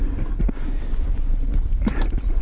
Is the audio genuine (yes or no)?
yes